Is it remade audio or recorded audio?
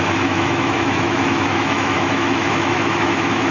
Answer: remade